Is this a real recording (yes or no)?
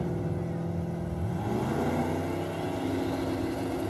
yes